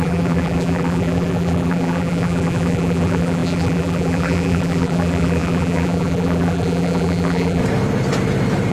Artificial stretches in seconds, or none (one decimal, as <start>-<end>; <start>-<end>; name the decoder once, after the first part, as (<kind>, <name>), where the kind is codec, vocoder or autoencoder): 0.0-7.6 (vocoder, BigVGAN v2)